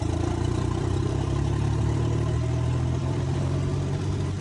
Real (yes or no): no